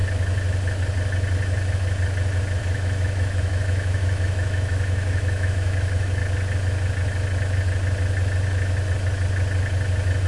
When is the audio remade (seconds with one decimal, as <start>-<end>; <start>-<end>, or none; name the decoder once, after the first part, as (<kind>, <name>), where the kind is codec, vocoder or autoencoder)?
2.6-6.2 (autoencoder, DAC-VAE)